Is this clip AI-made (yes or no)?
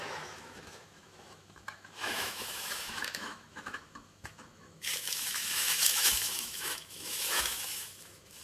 yes